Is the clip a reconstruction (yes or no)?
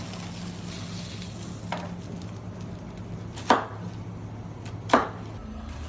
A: no